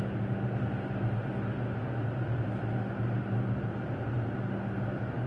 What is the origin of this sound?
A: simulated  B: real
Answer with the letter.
B